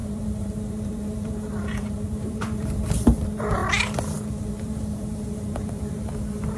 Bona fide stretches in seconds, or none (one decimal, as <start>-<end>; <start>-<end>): 3.6-4.5